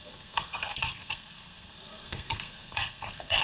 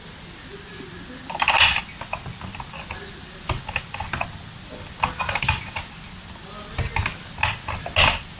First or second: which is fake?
first